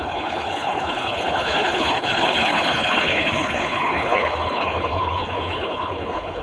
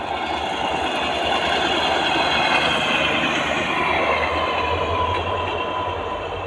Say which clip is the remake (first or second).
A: first